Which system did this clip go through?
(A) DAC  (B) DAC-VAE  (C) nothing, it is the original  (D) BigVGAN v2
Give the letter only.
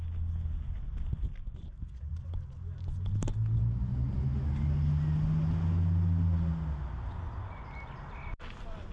C